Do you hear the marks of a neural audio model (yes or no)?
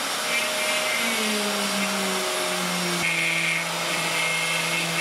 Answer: no